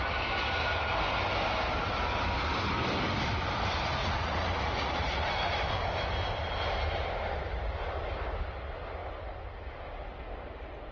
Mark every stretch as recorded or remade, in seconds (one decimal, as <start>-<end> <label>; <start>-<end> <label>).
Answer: 0.0-4.0 recorded; 4.0-5.3 remade; 5.3-10.9 recorded